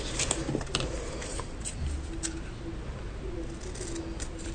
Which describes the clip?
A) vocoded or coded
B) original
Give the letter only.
B